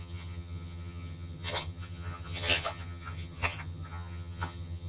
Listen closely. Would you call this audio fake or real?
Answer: fake